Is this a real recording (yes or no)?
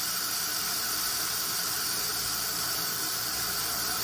no